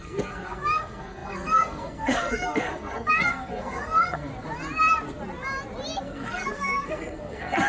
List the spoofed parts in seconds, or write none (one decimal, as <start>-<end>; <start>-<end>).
0.0-4.3; 6.0-7.7